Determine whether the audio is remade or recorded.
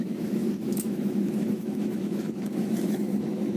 remade